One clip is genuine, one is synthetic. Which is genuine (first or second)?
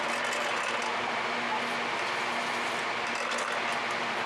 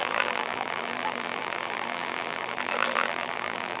first